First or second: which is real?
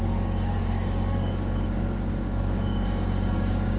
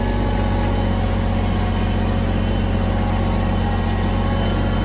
second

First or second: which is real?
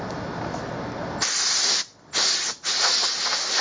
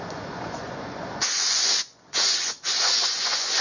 first